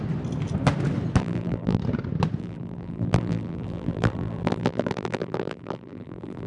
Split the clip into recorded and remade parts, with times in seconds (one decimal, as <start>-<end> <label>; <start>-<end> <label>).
0.0-1.2 recorded; 1.2-1.8 remade; 1.8-2.4 recorded; 2.4-6.5 remade